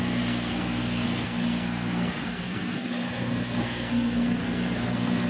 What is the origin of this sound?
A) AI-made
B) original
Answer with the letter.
A